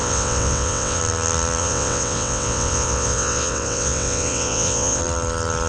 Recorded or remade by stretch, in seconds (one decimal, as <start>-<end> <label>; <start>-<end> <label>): 0.0-1.0 remade; 1.0-1.6 recorded; 1.6-5.0 remade; 5.0-5.7 recorded